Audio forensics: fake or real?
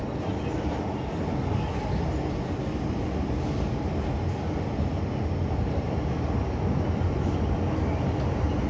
real